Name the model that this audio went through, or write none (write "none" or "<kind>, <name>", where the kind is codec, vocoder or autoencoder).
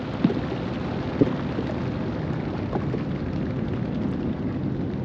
none